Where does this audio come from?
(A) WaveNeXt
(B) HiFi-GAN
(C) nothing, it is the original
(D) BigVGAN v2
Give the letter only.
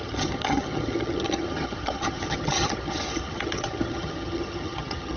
B